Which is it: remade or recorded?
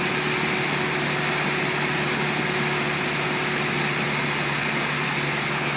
recorded